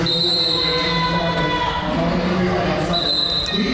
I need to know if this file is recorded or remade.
recorded